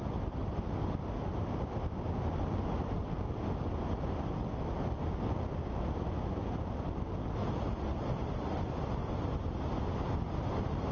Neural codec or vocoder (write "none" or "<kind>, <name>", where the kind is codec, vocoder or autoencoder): none